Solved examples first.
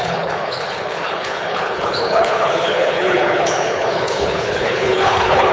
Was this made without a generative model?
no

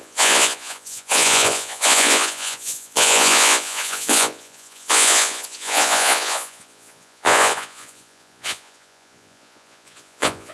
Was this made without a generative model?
no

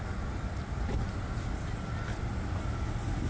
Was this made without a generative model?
yes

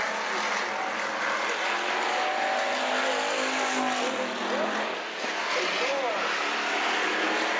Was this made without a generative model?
yes